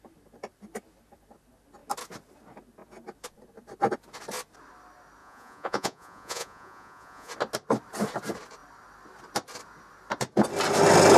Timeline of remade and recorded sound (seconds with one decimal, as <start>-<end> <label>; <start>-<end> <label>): 0.0-5.2 recorded; 5.2-7.3 remade; 7.3-11.2 recorded